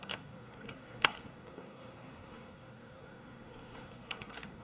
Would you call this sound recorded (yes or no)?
no